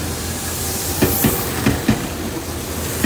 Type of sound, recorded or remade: recorded